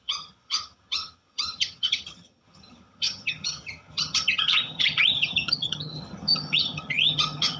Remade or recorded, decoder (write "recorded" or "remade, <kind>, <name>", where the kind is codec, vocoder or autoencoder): remade, vocoder, HiFi-GAN